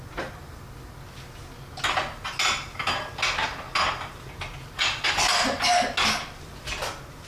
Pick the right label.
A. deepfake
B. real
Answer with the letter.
B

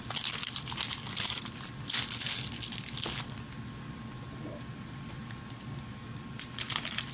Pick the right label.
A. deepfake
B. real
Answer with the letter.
B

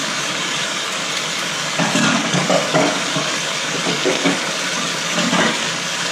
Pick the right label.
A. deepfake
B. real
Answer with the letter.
A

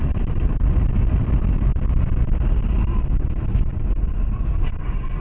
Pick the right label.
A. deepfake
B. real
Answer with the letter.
B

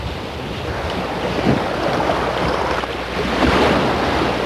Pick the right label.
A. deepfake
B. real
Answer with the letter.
B